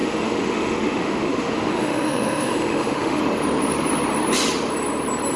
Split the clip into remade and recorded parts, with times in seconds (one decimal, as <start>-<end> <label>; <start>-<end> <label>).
0.0-3.2 remade; 3.2-5.4 recorded